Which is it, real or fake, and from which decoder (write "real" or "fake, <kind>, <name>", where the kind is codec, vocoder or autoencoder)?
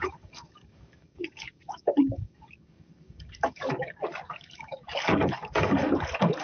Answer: fake, codec, DAC